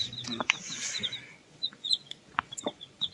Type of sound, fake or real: fake